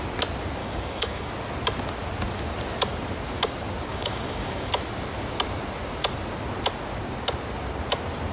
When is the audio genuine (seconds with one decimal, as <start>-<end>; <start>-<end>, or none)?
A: 0.0-0.6; 1.3-3.9; 4.7-8.3